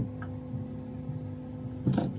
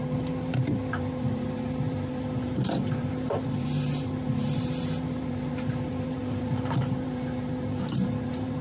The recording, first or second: first